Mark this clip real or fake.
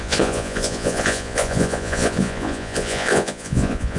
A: fake